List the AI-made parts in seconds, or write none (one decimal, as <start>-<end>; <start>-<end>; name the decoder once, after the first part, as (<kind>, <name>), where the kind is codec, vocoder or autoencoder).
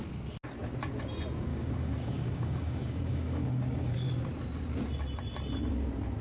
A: 1.5-4.1 (codec, DAC)